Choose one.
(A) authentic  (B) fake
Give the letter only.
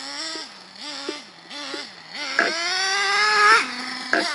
A